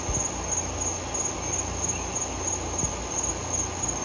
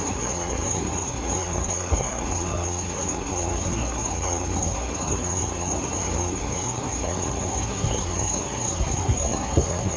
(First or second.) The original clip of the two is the first